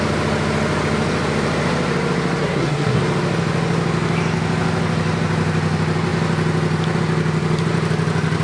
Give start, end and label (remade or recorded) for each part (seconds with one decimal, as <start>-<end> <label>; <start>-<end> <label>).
0.0-2.4 recorded; 2.4-3.0 remade; 3.0-8.4 recorded